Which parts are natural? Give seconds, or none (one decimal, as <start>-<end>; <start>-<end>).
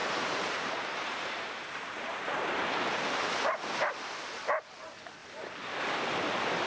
2.4-6.7